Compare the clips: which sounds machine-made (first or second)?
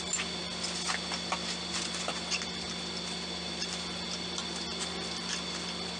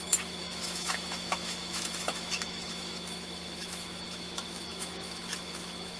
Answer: second